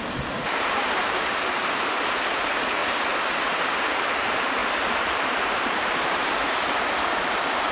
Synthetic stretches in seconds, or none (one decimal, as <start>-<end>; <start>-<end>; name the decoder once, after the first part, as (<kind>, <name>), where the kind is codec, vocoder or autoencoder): 0.0-2.8 (vocoder, BigVGAN v2); 3.8-7.7